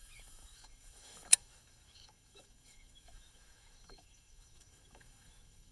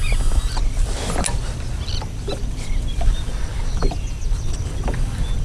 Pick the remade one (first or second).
first